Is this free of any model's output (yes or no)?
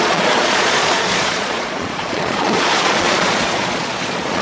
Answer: no